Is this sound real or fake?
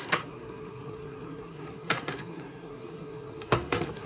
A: fake